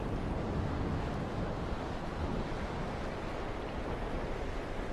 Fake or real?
real